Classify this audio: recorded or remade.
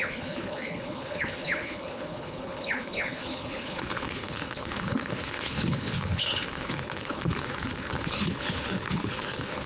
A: remade